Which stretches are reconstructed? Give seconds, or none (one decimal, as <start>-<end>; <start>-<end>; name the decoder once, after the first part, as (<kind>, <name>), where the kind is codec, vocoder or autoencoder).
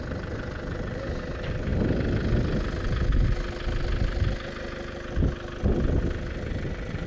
none